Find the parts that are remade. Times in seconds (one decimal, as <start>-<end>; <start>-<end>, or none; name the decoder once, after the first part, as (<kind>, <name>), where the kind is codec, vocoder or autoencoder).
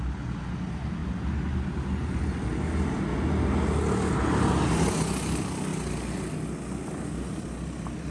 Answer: none